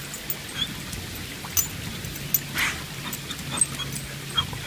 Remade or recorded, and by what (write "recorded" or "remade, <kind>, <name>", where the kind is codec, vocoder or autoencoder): recorded